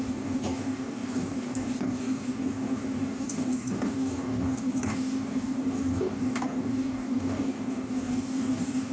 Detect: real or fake fake